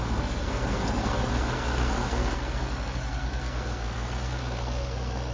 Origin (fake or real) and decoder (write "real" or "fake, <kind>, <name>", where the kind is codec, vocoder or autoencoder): fake, codec, SNAC